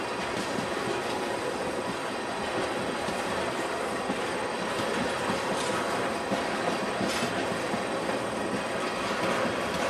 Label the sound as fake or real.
real